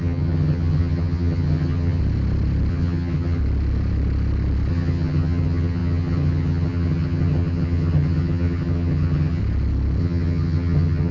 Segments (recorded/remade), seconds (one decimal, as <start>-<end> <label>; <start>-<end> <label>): 0.0-2.0 remade; 2.0-2.7 recorded; 2.7-3.4 remade; 3.4-4.7 recorded; 4.7-9.4 remade; 9.4-10.0 recorded; 10.0-11.1 remade